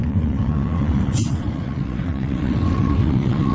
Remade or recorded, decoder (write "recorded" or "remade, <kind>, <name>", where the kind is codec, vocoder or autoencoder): remade, vocoder, WaveNeXt